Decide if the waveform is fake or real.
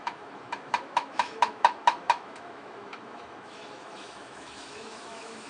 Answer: fake